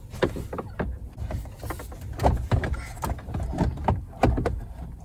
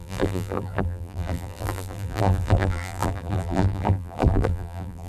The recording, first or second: first